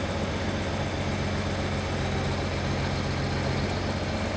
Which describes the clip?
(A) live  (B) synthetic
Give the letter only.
A